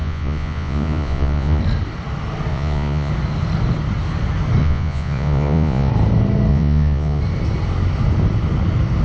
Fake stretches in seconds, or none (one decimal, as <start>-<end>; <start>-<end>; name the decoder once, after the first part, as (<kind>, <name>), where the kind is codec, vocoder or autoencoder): 0.0-1.6 (vocoder, Vocos); 2.5-3.1; 4.6-5.9; 6.5-7.2